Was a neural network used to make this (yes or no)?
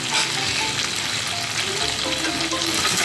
no